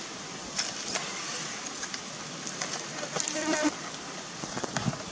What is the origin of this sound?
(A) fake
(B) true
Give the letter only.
B